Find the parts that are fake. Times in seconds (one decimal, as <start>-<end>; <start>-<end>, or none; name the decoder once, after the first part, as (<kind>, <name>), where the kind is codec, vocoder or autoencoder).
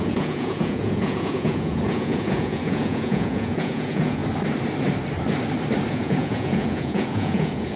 0.0-4.2 (vocoder, Vocos); 5.9-7.8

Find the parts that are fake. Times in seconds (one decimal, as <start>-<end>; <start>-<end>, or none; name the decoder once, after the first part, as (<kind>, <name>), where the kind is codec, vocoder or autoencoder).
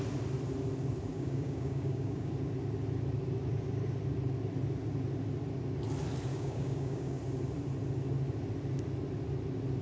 1.1-2.3 (codec, DAC); 6.3-7.2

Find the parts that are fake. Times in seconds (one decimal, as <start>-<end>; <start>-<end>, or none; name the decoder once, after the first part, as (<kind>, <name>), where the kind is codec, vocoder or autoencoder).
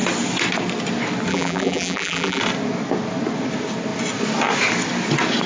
1.3-2.4 (vocoder, BigVGAN v2)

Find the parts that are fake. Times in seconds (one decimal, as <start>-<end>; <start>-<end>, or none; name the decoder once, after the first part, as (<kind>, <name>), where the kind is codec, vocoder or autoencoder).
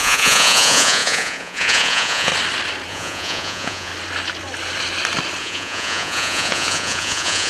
0.0-2.3 (vocoder, Vocos); 2.9-3.9; 5.4-7.5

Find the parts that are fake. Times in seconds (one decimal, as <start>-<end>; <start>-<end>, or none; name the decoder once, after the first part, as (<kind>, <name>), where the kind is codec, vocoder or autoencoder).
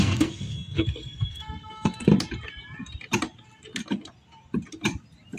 0.0-2.1 (codec, SNAC)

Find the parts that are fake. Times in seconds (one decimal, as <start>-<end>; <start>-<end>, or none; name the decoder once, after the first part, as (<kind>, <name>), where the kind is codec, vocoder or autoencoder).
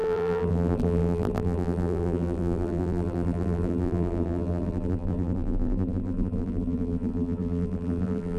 0.0-8.4 (vocoder, BigVGAN v2)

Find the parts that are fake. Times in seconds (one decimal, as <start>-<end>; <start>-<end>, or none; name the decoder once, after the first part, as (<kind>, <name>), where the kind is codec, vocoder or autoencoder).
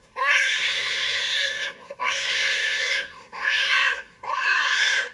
0.0-5.1 (codec, SNAC)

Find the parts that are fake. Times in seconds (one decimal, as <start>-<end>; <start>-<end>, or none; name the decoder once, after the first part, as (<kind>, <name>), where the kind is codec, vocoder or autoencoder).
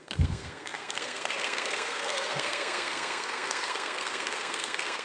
0.0-5.0 (codec, SNAC)